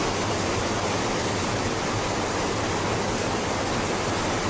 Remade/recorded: recorded